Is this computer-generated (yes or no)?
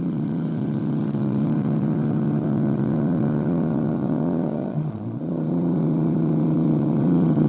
yes